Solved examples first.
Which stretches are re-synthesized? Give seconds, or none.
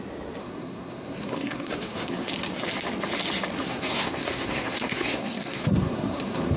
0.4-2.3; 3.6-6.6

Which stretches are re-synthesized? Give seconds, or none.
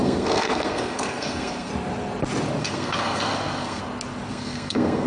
0.0-1.7; 2.6-3.8; 4.3-5.1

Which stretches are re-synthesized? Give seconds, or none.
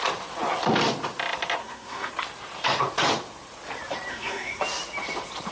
1.6-2.1; 4.1-4.6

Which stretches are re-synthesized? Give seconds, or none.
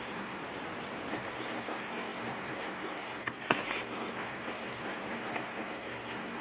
0.0-0.4; 1.1-6.4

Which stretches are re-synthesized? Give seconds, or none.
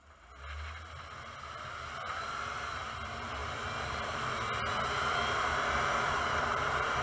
none